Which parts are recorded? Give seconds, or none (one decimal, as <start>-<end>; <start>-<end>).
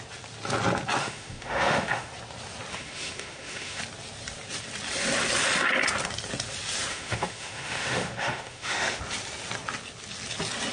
0.0-1.0; 2.1-2.7; 3.8-6.9; 9.0-10.7